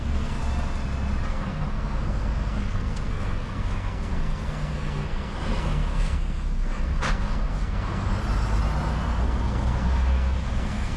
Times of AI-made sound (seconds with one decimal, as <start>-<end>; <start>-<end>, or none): 0.0-0.4; 1.3-8.1; 8.9-11.0